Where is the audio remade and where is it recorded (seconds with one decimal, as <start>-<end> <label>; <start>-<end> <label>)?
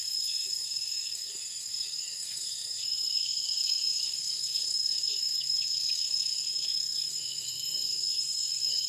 0.0-8.9 remade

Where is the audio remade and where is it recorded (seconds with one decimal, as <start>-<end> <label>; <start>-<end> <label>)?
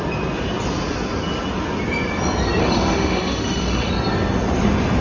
0.0-2.6 recorded; 2.6-3.9 remade; 3.9-5.0 recorded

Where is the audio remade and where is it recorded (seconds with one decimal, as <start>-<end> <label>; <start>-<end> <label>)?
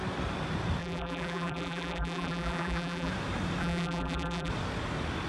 0.0-0.8 recorded; 0.8-3.1 remade; 3.1-3.6 recorded; 3.6-4.5 remade; 4.5-5.3 recorded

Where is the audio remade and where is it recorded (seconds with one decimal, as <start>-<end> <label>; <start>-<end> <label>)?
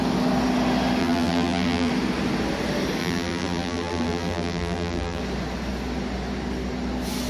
0.0-1.0 recorded; 1.0-1.9 remade; 1.9-3.0 recorded; 3.0-5.2 remade; 5.2-7.3 recorded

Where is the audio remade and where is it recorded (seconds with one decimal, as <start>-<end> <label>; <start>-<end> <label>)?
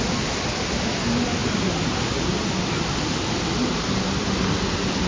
0.0-5.1 recorded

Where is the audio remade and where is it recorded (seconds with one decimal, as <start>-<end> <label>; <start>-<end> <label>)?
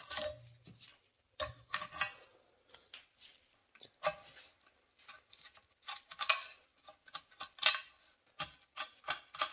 0.0-0.9 recorded; 0.9-2.4 remade; 2.4-6.7 recorded; 6.7-7.7 remade; 7.7-9.5 recorded